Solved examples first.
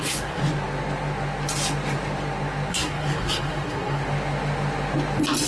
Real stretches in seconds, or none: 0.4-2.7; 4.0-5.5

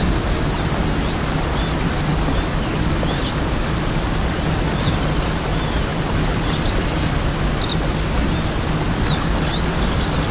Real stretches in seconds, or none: 0.0-10.3

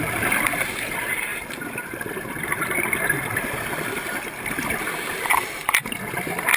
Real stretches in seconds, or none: 0.0-6.6

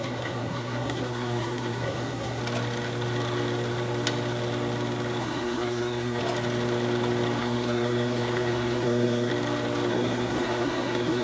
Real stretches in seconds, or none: 2.4-5.2; 6.2-7.4; 9.3-9.9